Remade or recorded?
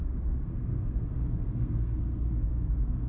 remade